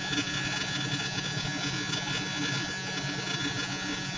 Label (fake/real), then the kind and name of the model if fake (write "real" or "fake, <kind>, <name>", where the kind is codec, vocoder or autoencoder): fake, vocoder, Vocos